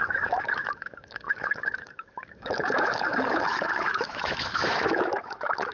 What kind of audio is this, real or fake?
fake